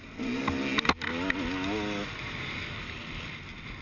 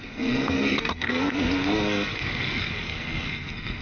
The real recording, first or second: first